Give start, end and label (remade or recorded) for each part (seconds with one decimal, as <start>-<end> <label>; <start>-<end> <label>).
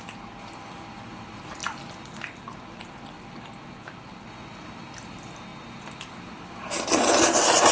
0.0-7.7 recorded